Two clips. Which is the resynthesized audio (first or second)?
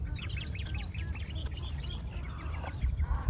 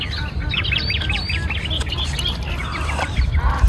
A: first